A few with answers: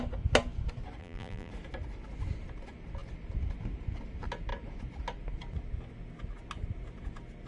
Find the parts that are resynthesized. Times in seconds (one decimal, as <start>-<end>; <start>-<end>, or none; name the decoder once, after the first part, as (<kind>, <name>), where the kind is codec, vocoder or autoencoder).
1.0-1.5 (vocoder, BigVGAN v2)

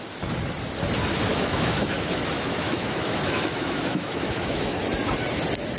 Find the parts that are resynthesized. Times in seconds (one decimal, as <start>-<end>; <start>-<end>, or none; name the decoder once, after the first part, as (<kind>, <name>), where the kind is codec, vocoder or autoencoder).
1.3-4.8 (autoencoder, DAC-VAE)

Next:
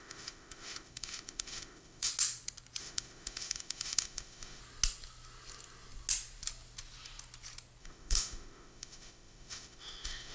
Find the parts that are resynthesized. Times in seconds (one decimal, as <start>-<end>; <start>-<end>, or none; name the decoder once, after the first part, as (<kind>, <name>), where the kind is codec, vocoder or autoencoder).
0.0-2.1 (autoencoder, DAC-VAE); 2.8-4.6; 7.8-10.3